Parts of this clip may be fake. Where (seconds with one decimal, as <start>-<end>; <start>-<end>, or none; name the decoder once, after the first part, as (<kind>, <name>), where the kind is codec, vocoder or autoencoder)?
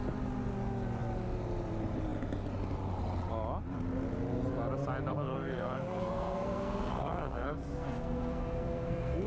5.1-9.3 (codec, SNAC)